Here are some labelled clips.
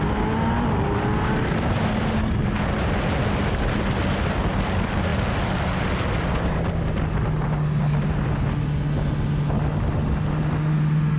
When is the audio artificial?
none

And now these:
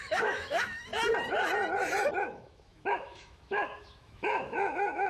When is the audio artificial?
0.0-0.9 (autoencoder, DAC-VAE); 2.2-5.1

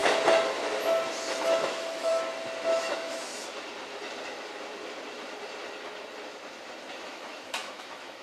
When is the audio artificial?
1.4-2.1 (autoencoder, DAC-VAE); 2.8-3.3; 6.9-8.2

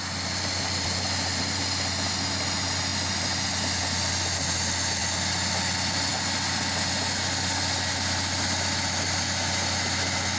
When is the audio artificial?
none

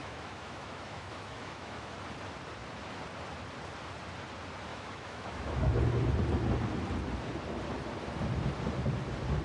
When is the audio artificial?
0.0-1.9 (autoencoder, DAC-VAE); 4.7-5.8

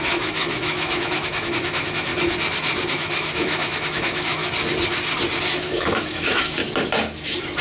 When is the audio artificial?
0.0-2.1 (autoencoder, DAC-VAE); 2.9-4.4; 5.4-6.6

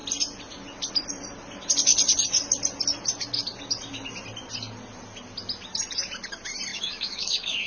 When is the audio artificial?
6.7-7.7 (autoencoder, DAC-VAE)